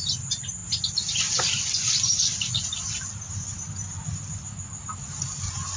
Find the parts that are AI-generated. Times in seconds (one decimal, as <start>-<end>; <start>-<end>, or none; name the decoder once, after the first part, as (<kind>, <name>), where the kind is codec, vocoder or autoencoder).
none